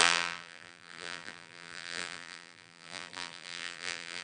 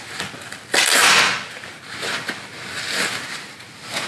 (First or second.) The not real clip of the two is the first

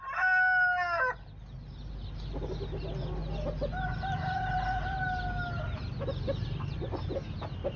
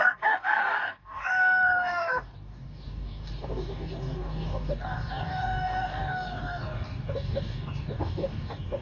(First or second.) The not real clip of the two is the second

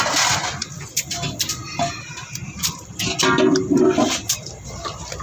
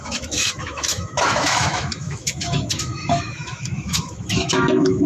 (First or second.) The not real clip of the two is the second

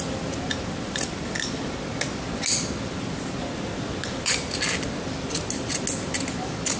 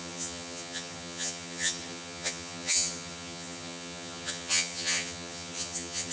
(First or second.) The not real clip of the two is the second